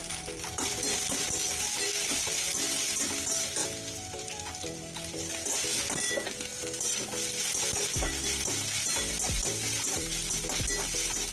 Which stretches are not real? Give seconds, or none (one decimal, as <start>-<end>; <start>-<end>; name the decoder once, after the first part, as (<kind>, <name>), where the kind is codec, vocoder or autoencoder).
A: 0.0-1.4 (vocoder, BigVGAN v2); 3.6-5.8; 6.5-10.4